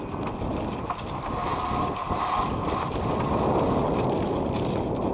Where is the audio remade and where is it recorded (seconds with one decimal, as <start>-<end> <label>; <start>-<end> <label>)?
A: 0.0-5.1 recorded